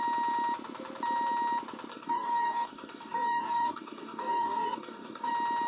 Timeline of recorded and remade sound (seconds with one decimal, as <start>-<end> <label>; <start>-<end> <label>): 0.0-1.9 recorded; 1.9-5.3 remade; 5.3-5.7 recorded